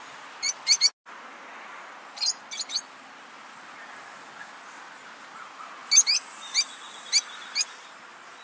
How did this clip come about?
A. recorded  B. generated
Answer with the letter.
A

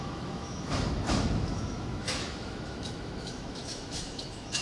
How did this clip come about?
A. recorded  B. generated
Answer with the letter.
B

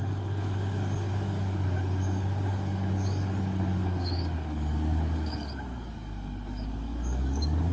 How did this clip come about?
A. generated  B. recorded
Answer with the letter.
A